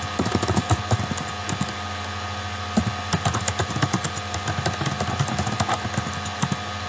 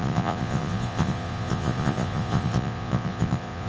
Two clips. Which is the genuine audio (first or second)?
first